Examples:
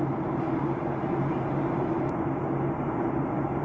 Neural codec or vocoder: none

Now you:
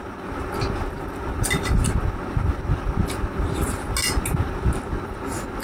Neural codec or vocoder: none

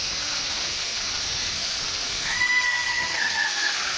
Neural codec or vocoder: codec, SNAC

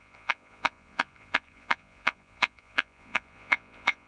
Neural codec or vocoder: vocoder, Vocos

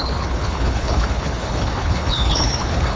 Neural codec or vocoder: codec, HILCodec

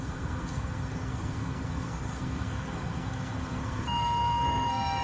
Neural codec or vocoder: codec, SNAC